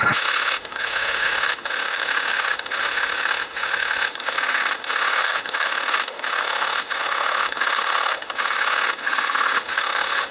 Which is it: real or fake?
fake